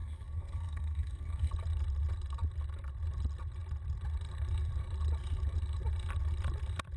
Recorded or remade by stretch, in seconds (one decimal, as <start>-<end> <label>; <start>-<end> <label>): 0.0-1.5 remade; 1.5-7.0 recorded

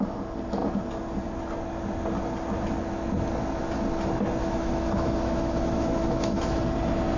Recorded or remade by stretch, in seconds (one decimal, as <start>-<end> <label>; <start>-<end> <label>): 0.0-4.4 recorded; 4.4-6.6 remade; 6.6-7.2 recorded